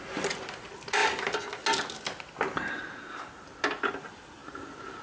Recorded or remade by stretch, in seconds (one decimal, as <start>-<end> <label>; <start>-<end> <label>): 0.0-5.0 recorded